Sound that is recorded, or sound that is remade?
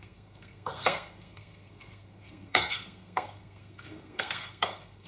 remade